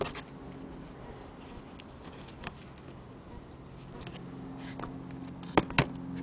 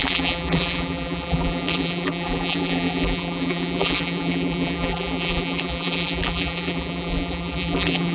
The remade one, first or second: second